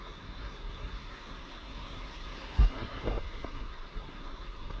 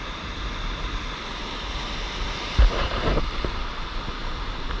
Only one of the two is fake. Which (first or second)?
first